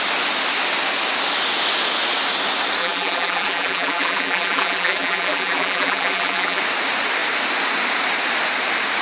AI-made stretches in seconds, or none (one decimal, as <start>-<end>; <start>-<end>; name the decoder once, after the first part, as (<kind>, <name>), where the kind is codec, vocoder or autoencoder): 2.8-6.6 (vocoder, BigVGAN v2)